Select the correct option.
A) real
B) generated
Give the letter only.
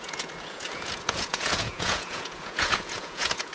B